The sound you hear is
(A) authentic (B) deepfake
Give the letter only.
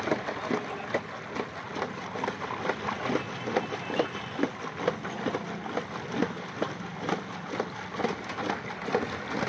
A